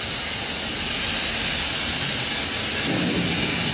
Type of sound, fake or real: real